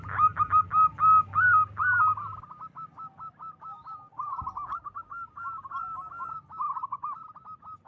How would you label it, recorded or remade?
recorded